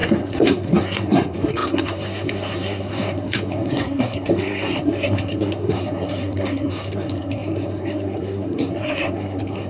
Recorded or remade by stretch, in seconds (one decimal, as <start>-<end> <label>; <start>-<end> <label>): 0.0-9.7 remade

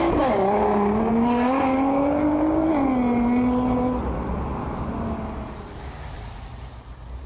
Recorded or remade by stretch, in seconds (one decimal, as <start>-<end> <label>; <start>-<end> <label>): 0.0-2.7 remade; 2.7-7.3 recorded

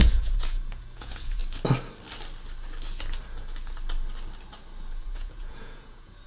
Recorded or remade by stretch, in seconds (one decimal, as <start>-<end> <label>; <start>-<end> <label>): 0.0-1.4 remade; 1.4-4.9 recorded; 4.9-6.3 remade

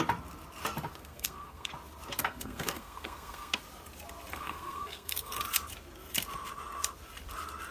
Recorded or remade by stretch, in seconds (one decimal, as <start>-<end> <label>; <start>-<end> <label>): 0.0-0.9 recorded; 0.9-1.7 remade; 1.7-2.2 recorded; 2.2-3.6 remade; 3.6-4.3 recorded; 4.3-5.4 remade; 5.4-7.7 recorded

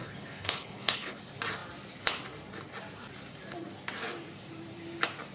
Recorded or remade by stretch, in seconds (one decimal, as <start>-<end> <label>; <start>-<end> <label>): 0.0-1.2 remade; 1.2-5.3 recorded

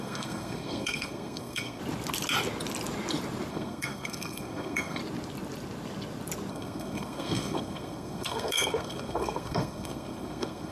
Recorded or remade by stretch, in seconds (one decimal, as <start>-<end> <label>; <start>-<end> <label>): 0.0-1.8 remade; 1.8-3.5 recorded; 3.5-5.0 remade; 5.0-6.5 recorded; 6.5-10.7 remade

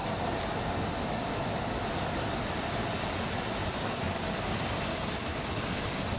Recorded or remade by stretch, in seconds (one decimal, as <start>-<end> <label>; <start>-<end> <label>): 0.0-6.2 recorded